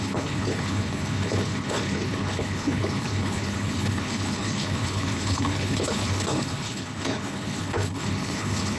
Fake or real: fake